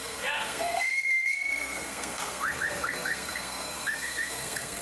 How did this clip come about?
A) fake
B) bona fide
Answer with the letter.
A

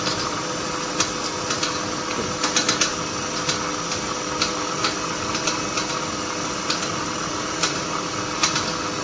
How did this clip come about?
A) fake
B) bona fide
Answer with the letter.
B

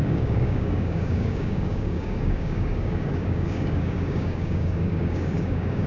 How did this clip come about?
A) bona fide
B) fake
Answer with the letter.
B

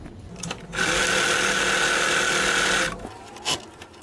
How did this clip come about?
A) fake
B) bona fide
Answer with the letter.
B